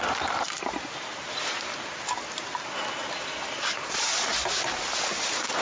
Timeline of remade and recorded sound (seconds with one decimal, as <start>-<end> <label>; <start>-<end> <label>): 0.0-5.6 recorded